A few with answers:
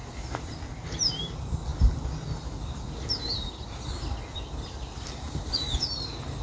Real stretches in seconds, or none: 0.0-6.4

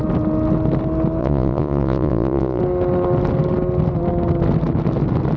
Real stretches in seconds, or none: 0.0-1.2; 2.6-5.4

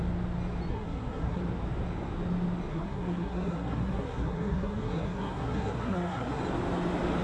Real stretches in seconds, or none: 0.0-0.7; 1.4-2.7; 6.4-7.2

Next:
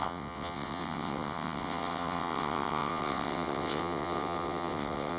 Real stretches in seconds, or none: none

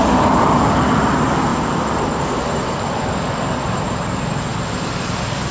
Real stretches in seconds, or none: 0.0-1.5; 2.8-5.5

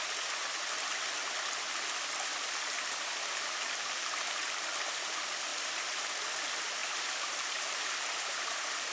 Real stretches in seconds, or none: 0.0-5.5; 6.1-6.8

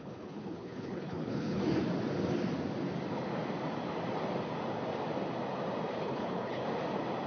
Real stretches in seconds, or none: 1.6-6.0; 6.6-7.3